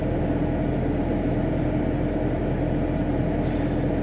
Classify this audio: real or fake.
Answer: real